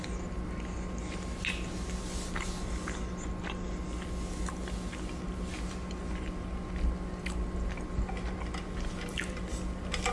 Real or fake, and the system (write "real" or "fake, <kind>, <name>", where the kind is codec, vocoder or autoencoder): real